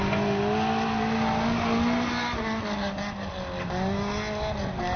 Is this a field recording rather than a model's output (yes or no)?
yes